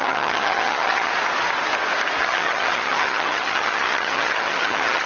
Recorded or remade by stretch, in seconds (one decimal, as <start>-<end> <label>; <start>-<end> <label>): 0.0-1.1 remade; 1.1-2.2 recorded; 2.2-5.1 remade